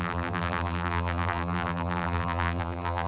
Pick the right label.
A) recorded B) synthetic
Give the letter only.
B